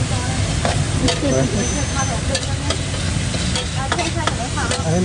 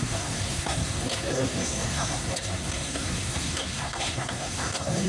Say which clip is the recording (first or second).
first